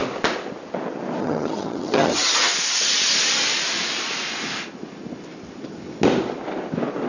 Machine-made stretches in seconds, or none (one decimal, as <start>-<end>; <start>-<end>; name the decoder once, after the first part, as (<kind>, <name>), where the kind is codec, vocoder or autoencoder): 1.2-2.4 (vocoder, HiFi-GAN)